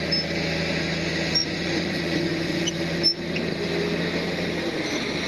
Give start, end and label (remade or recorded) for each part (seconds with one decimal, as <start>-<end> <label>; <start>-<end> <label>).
0.0-1.4 recorded; 1.4-2.8 remade; 2.8-5.3 recorded